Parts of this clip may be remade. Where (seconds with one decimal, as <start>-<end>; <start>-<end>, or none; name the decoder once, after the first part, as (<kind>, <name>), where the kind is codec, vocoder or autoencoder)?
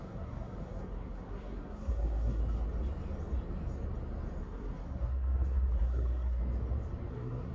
0.0-2.4 (codec, SNAC); 4.4-6.4; 7.1-7.5